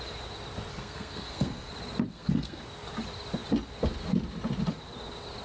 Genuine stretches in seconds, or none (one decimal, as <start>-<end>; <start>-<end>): 0.0-0.7; 1.7-2.1; 2.6-5.4